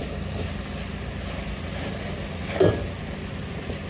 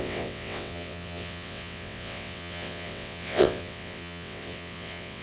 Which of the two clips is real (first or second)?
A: first